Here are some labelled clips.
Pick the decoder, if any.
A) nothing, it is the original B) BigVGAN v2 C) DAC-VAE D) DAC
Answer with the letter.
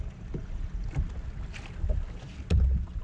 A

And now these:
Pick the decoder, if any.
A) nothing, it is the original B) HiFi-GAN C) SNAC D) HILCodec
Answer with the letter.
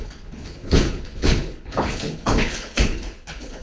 D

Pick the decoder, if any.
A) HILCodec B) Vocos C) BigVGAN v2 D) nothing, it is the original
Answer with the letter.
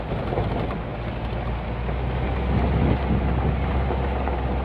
D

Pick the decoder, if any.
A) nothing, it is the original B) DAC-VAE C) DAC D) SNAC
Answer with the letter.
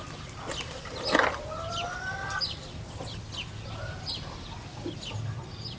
A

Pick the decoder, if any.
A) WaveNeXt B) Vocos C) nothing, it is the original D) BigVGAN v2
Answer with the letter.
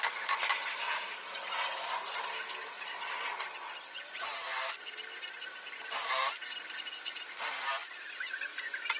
C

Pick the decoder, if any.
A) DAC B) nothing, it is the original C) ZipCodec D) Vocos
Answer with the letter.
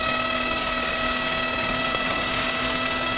A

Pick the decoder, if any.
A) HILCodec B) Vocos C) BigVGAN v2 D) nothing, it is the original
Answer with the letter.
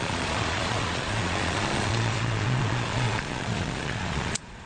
B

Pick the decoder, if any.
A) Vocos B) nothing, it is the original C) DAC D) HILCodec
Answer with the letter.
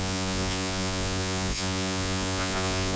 A